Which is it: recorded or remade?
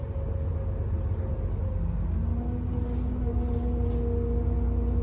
recorded